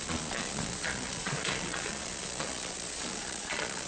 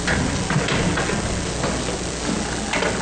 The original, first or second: second